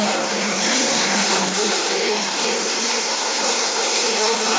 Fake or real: fake